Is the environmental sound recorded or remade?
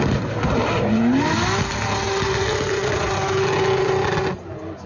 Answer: recorded